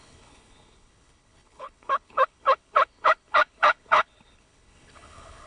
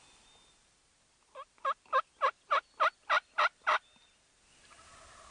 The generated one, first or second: first